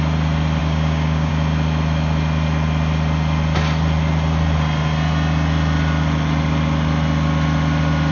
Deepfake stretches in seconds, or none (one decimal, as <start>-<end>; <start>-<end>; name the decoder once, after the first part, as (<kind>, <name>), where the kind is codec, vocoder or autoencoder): 0.6-1.3 (codec, DAC)